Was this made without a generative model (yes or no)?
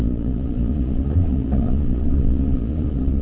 no